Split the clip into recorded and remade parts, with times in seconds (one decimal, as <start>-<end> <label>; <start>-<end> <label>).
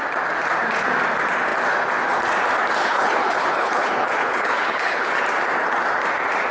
0.0-2.8 recorded; 2.8-5.2 remade; 5.2-6.5 recorded